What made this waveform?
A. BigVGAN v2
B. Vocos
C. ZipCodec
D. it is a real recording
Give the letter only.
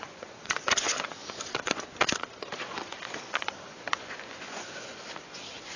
B